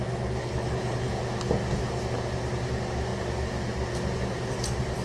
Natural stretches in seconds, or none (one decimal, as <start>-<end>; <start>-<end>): 0.0-0.4; 1.1-5.0